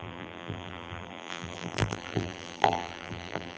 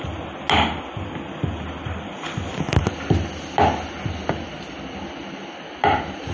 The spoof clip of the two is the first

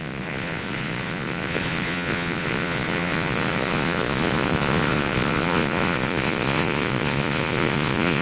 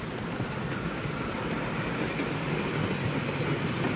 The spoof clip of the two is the first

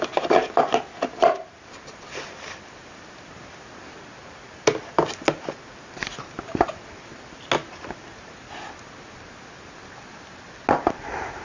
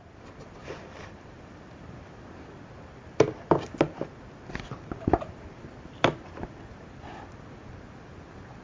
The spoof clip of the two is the second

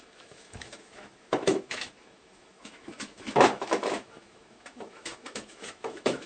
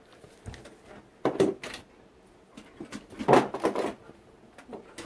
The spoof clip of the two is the first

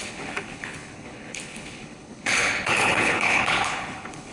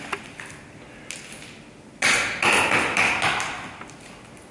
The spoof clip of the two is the first